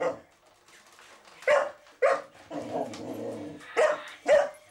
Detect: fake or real real